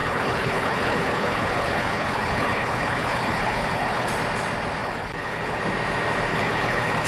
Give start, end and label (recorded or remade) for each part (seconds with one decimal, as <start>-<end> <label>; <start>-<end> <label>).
0.0-4.1 remade; 4.1-4.8 recorded; 4.8-5.6 remade; 5.6-6.3 recorded; 6.3-7.1 remade